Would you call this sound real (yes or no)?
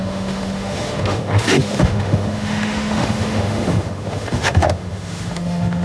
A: no